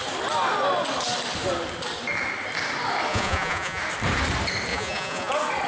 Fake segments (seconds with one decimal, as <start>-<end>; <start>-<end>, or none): 3.1-3.8; 4.7-5.3